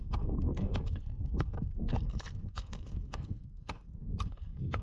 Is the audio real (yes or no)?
no